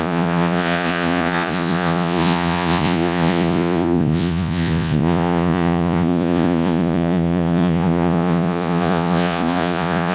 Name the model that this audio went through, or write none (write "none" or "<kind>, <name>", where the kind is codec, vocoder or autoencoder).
vocoder, Vocos